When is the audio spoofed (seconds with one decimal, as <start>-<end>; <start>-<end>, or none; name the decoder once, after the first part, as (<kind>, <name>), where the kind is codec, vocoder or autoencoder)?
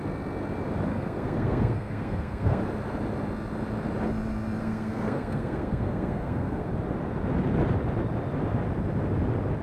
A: 0.9-2.6 (codec, SNAC); 4.6-6.7